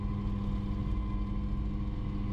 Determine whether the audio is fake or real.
real